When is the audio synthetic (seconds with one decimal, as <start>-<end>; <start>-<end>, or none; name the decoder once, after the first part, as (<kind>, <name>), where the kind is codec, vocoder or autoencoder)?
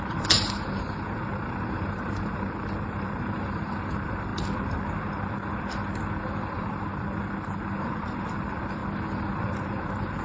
0.0-4.3 (vocoder, BigVGAN v2); 6.5-6.9; 7.7-8.8; 9.4-10.2